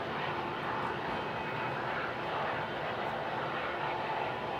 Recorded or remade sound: recorded